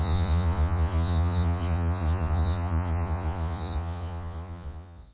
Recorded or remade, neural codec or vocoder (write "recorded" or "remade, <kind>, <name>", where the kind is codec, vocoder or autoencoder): remade, vocoder, Vocos